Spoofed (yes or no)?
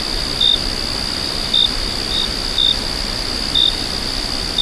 no